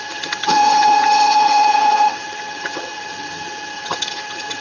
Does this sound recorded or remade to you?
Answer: remade